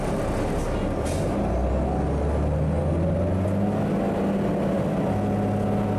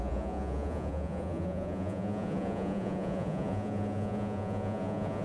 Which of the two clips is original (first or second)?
first